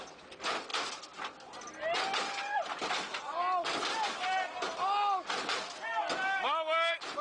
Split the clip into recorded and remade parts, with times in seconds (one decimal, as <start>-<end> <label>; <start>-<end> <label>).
0.0-7.2 recorded